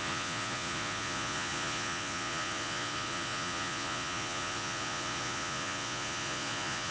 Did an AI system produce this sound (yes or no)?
yes